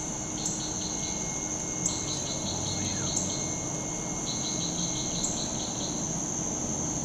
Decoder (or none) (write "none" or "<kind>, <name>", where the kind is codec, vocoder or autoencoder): none